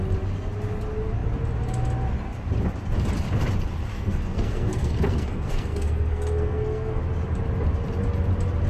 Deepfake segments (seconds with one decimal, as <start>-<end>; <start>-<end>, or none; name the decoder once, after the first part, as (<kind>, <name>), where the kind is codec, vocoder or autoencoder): 3.9-7.0 (codec, SNAC)